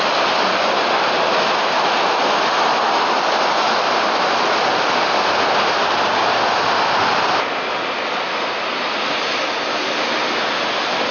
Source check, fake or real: real